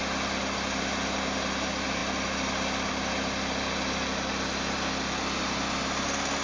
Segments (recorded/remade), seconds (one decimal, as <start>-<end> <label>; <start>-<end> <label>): 0.0-6.4 recorded